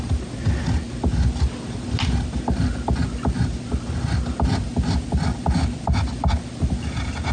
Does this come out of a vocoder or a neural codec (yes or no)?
no